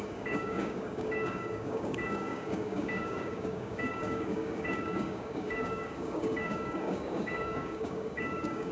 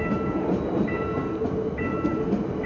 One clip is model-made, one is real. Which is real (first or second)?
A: second